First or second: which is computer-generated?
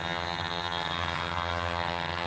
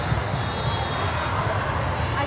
first